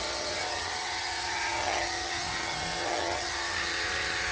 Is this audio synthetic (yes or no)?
yes